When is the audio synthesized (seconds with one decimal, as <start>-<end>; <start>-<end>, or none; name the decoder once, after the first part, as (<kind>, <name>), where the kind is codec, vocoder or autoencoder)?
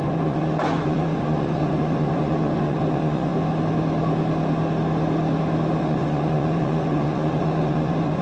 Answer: 0.0-3.3 (vocoder, Vocos); 5.8-8.2